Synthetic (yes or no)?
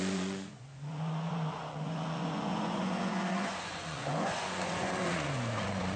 yes